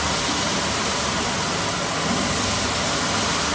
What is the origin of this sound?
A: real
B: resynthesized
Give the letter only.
A